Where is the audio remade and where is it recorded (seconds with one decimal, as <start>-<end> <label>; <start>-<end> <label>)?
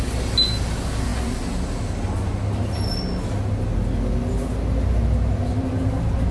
0.0-6.3 recorded